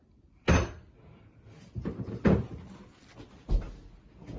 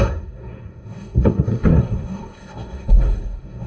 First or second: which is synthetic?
second